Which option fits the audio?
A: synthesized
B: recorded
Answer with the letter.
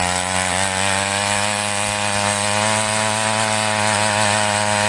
B